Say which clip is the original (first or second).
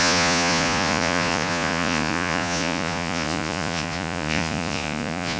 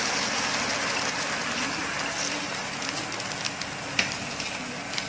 second